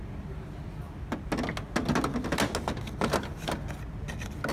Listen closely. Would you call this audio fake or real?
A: real